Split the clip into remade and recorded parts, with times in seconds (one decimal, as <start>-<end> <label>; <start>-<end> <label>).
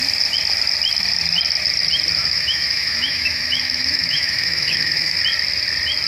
0.0-2.2 recorded; 2.2-5.2 remade; 5.2-6.1 recorded